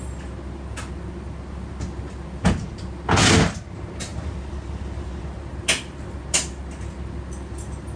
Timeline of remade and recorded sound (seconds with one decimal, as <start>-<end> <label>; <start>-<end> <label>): 0.0-8.0 recorded